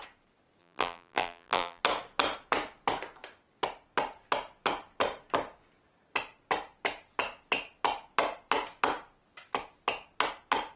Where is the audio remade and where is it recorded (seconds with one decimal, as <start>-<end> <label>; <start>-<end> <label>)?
0.0-0.6 recorded; 0.6-1.8 remade; 1.8-10.8 recorded